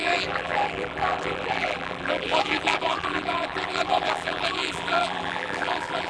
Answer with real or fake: fake